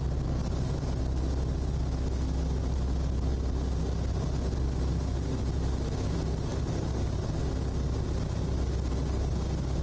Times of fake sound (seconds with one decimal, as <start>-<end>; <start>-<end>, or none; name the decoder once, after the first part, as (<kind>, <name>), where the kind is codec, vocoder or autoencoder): none